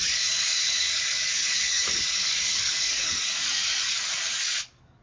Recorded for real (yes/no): no